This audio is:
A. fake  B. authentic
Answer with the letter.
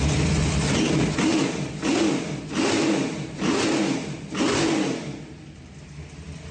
B